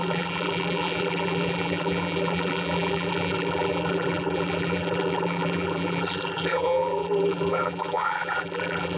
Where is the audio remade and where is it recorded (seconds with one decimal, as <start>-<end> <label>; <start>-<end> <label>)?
0.0-9.0 remade